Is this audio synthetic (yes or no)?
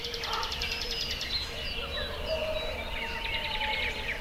no